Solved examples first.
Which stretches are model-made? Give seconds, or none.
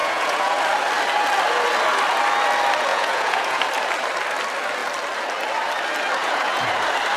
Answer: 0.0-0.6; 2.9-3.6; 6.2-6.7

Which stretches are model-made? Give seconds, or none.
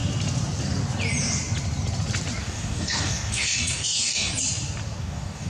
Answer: 2.4-4.3; 5.0-5.5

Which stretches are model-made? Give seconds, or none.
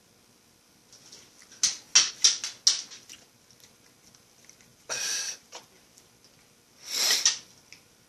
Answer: 4.7-5.6